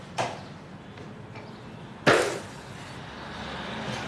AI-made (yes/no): no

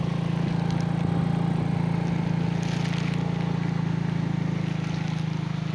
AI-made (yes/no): no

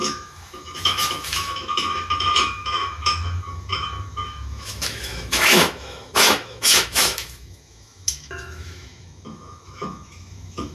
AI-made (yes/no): yes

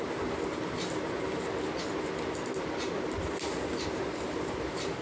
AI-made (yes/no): no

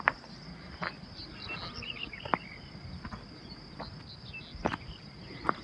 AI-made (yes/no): no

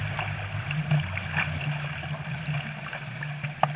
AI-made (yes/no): no